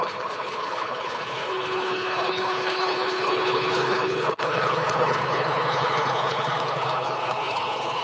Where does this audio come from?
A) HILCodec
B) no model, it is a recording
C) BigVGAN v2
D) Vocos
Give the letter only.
A